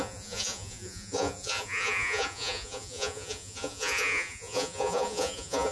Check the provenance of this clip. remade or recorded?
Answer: remade